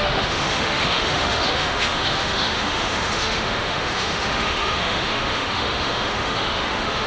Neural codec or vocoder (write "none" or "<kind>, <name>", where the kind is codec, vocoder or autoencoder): autoencoder, DAC-VAE